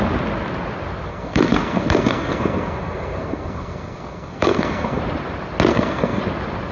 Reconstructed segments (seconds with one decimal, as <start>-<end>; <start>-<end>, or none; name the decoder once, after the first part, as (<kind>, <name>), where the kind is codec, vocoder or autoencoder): 1.1-5.0 (codec, SNAC); 5.7-6.2

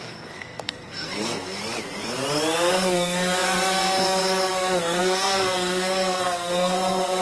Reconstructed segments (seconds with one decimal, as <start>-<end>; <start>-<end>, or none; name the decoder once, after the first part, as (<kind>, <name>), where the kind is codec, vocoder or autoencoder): 0.0-1.6 (codec, SNAC); 2.7-7.2

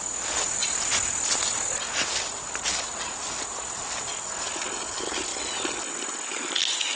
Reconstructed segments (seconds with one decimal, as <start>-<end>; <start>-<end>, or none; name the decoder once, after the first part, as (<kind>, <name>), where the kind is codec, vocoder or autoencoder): none

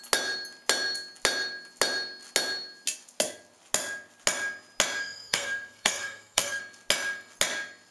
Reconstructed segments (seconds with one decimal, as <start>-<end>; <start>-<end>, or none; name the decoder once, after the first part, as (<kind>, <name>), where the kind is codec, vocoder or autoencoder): 5.0-6.6 (codec, SNAC)

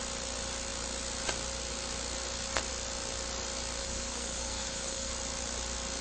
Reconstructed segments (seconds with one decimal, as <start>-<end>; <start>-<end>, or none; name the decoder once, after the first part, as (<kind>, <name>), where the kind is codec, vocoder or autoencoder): 3.8-5.1 (codec, SNAC)